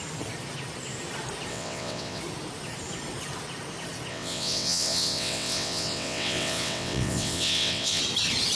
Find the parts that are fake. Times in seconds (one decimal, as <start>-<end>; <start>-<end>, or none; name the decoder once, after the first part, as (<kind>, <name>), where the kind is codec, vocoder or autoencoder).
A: 1.5-2.2 (vocoder, WaveNeXt); 4.1-8.0